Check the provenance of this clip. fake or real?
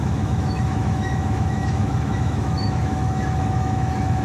fake